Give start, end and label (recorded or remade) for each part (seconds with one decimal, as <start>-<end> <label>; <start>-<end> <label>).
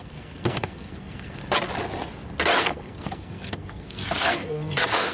0.0-1.4 remade; 1.4-2.6 recorded; 2.6-5.1 remade